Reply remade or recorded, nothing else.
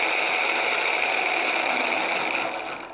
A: recorded